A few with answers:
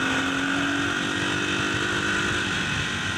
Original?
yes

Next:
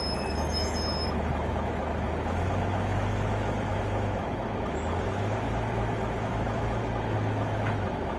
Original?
no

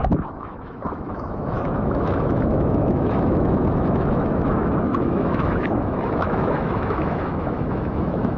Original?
no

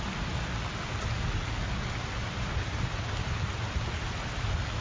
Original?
yes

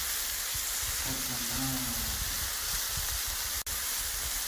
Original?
yes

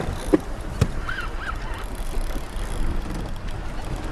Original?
yes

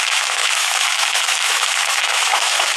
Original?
no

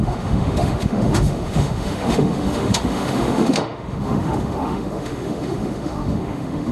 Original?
no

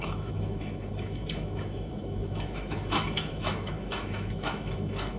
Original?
no